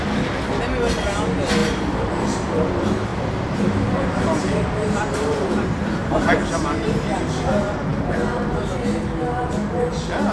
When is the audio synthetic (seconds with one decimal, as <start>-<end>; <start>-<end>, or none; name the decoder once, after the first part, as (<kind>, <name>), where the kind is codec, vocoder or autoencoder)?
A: 1.6-2.6 (vocoder, BigVGAN v2); 3.1-7.2